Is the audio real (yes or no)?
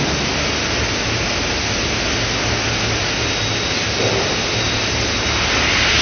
yes